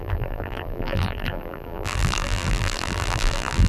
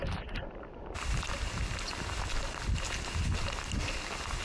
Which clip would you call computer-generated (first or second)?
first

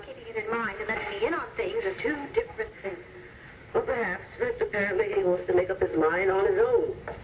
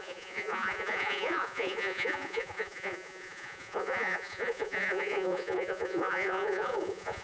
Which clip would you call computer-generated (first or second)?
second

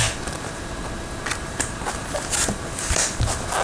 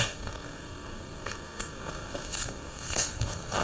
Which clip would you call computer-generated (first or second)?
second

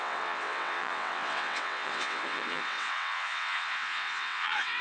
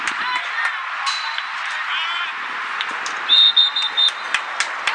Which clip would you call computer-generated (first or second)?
first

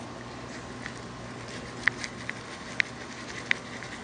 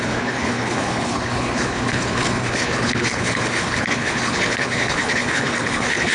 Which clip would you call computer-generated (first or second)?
second